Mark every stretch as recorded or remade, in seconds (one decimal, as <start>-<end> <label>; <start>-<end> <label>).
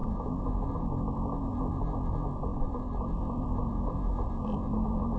0.0-2.5 recorded; 2.5-3.0 remade; 3.0-5.2 recorded